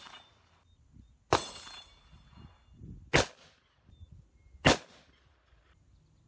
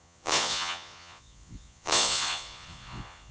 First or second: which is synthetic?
second